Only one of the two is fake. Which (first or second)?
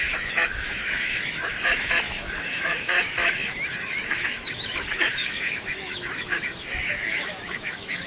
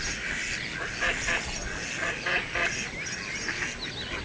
first